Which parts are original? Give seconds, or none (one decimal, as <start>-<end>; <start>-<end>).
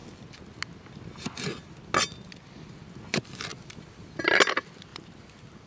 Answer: 0.0-5.7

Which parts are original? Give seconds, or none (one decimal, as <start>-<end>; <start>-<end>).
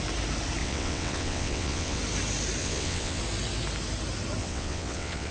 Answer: 0.0-0.6; 2.0-2.6; 3.2-4.4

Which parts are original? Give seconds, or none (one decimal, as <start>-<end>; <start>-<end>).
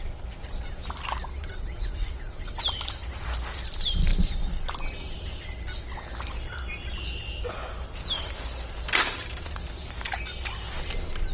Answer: 0.0-1.3; 2.6-11.3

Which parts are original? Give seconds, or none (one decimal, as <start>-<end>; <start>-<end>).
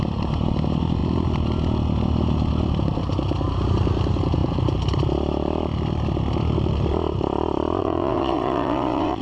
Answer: 0.0-7.8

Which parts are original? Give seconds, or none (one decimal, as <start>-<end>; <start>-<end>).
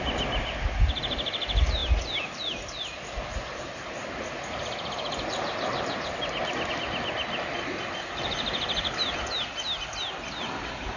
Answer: 0.0-11.0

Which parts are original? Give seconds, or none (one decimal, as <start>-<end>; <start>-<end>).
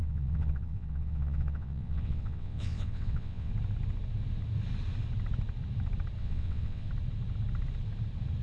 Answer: 3.5-6.2; 6.9-8.4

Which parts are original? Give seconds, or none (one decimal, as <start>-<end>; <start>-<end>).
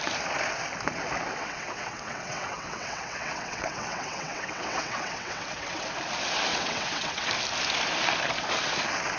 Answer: 0.0-1.4; 5.9-6.5; 7.3-9.2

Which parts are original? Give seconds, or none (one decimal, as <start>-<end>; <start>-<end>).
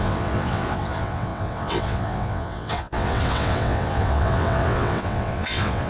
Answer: none